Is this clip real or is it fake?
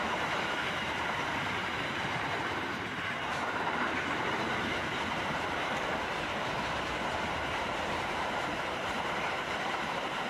fake